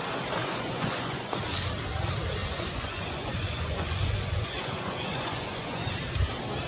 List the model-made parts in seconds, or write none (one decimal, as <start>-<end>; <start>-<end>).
0.4-1.4; 2.4-5.9